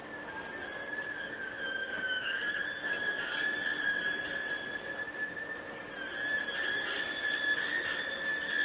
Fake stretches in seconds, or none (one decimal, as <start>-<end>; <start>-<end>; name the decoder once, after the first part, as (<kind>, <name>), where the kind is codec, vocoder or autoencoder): 1.8-2.5 (codec, DAC)